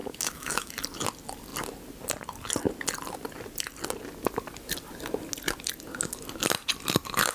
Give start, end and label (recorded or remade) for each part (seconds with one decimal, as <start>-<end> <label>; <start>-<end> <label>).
0.0-0.7 remade; 0.7-7.3 recorded